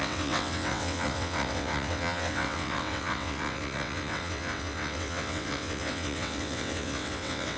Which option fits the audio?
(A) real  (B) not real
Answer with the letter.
B